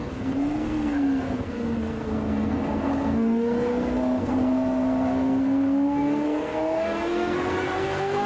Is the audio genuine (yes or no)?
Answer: no